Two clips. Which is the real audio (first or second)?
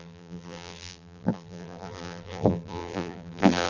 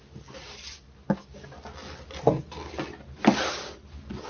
second